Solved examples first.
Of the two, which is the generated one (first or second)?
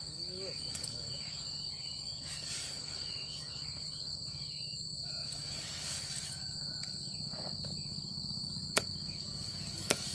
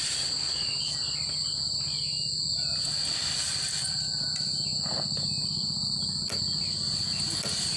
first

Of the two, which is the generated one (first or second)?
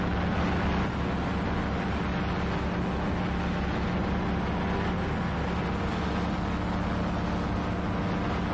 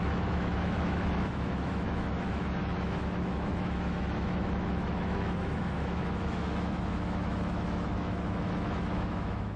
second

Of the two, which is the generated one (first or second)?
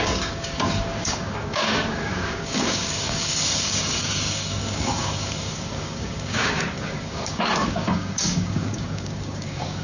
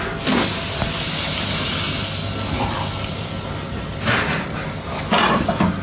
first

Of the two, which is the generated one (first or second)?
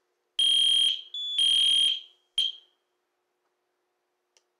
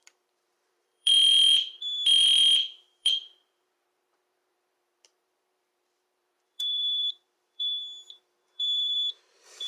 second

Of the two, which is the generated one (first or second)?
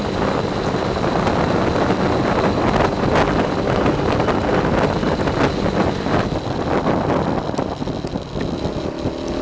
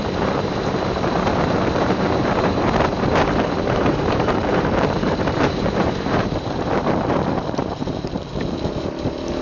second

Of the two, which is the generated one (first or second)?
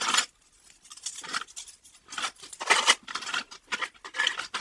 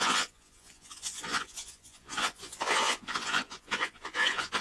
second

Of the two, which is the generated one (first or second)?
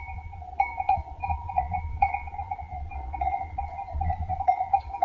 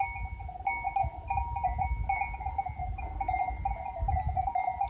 first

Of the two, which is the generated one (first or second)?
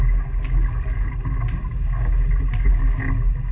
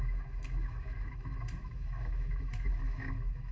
second